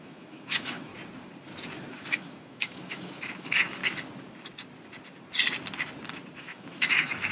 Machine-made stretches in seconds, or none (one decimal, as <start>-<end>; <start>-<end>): 0.0-0.9; 1.9-3.8; 6.4-7.3